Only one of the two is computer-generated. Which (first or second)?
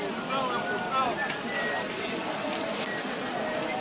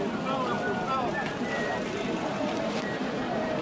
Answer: second